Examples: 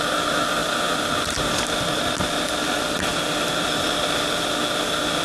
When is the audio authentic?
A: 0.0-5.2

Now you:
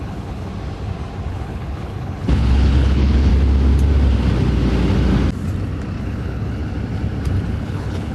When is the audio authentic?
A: 0.5-1.3; 3.3-6.0; 6.6-7.5

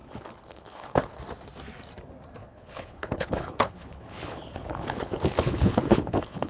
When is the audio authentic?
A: 1.2-2.4

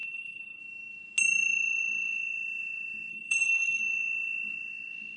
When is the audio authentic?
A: 0.6-3.1; 3.8-5.2

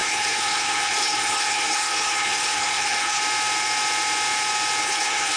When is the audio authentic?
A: 3.2-4.8